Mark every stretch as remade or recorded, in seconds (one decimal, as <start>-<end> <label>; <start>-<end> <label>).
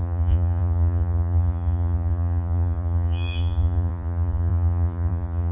0.0-5.5 remade